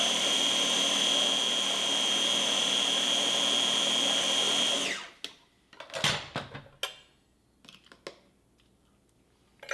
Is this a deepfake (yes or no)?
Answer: no